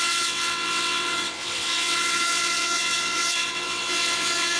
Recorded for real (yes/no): no